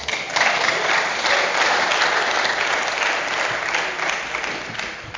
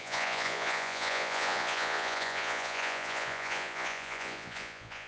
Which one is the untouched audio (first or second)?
first